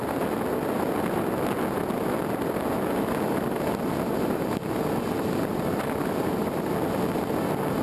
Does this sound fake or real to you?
real